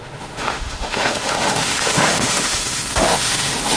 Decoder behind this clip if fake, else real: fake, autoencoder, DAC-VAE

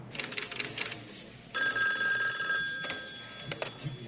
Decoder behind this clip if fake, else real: real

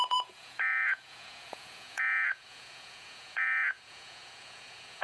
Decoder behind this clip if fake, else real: fake, vocoder, Vocos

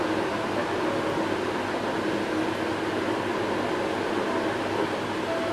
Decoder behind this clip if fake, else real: real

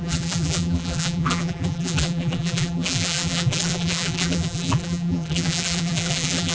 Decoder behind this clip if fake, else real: fake, vocoder, BigVGAN v2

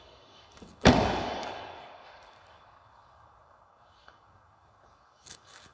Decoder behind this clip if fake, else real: fake, codec, DAC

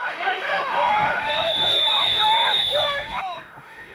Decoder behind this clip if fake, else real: fake, autoencoder, DAC-VAE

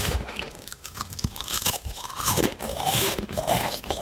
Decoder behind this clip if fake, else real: fake, autoencoder, DAC-VAE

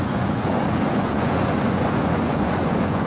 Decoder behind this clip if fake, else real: fake, vocoder, Vocos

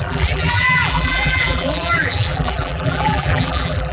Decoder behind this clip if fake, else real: fake, vocoder, BigVGAN v2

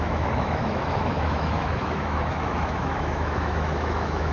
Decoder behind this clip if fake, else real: fake, autoencoder, DAC-VAE